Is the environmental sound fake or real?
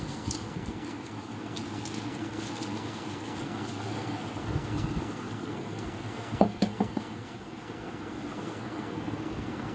fake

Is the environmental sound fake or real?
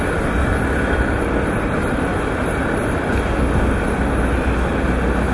real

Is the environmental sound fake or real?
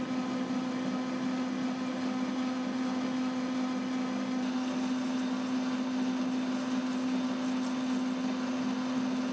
real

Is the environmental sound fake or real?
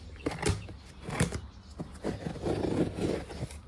real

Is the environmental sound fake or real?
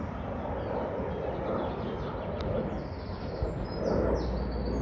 real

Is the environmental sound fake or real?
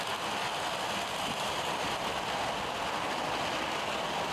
real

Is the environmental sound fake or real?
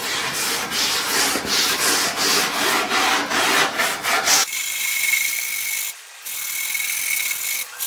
real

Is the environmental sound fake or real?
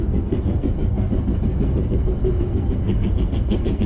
fake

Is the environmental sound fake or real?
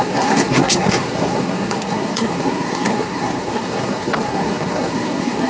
fake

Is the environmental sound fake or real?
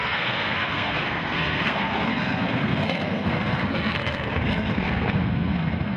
fake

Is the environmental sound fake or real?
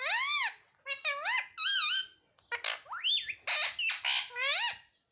real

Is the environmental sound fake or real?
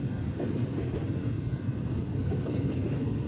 fake